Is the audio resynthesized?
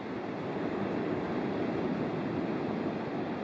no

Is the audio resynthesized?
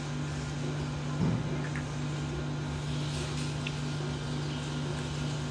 no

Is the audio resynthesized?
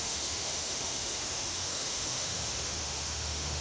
yes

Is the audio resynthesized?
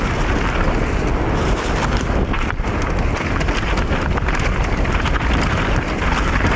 no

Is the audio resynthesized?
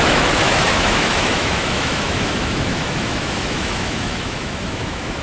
yes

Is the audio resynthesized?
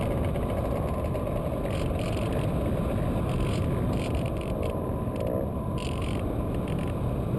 no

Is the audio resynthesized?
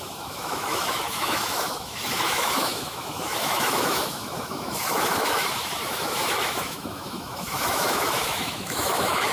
yes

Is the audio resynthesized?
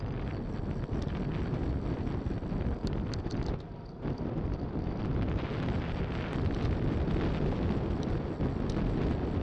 no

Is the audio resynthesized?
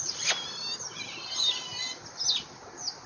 no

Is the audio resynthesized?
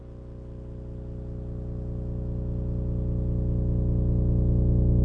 no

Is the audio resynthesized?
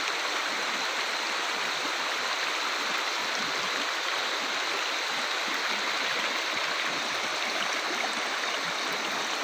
no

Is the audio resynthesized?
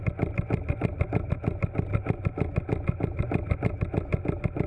no